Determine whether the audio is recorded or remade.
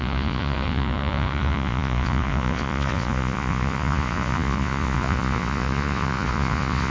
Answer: remade